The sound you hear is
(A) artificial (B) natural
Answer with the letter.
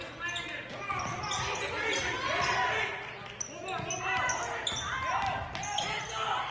B